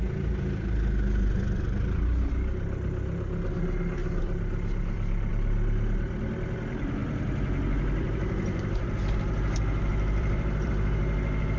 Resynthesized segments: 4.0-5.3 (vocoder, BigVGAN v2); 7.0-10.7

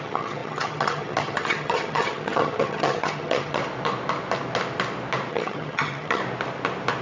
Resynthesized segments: 0.0-3.6 (vocoder, HiFi-GAN); 5.3-6.2